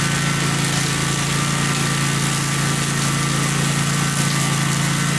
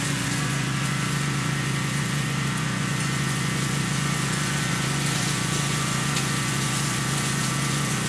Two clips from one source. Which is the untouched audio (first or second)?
first